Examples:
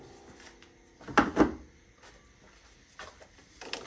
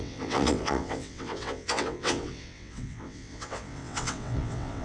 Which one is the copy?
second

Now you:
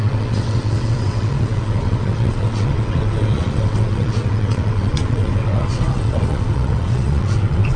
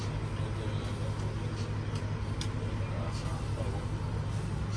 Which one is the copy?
first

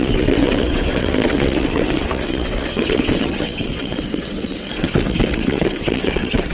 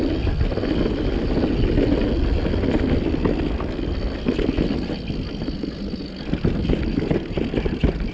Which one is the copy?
first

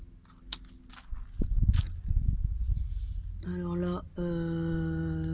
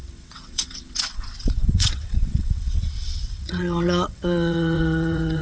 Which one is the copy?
second